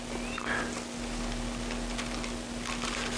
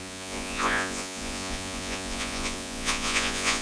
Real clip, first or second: first